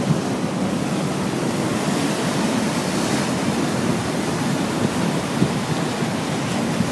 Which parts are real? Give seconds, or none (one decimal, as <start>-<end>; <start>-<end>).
0.0-1.7; 2.3-3.9; 5.4-6.9